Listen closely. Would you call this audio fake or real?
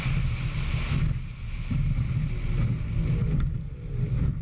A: real